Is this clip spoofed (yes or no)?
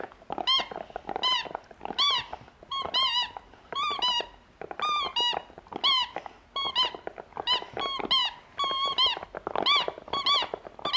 no